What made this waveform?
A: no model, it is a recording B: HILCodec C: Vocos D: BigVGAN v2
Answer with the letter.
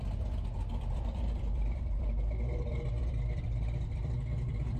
D